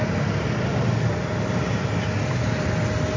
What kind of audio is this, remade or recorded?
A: recorded